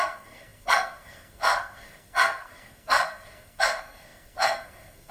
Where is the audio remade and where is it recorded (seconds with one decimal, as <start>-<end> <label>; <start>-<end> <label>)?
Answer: 0.0-5.1 remade